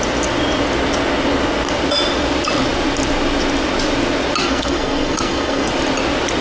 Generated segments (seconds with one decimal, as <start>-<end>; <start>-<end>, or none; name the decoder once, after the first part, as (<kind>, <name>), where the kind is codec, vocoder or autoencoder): 4.4-5.7 (codec, SNAC)